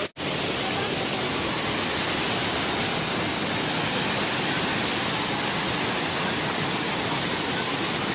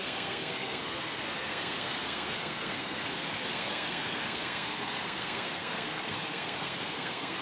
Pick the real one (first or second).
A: first